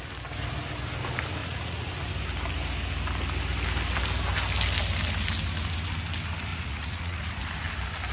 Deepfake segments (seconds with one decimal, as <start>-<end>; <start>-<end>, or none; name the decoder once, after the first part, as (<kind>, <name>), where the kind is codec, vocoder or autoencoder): 1.4-1.9 (vocoder, Vocos); 6.5-7.3